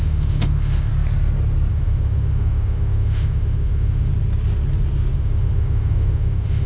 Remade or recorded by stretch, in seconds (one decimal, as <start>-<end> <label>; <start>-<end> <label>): 0.0-0.9 remade; 0.9-1.7 recorded; 1.7-4.1 remade; 4.1-5.1 recorded; 5.1-6.7 remade